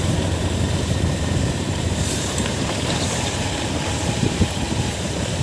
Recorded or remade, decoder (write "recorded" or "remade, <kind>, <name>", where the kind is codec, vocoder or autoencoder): remade, vocoder, BigVGAN v2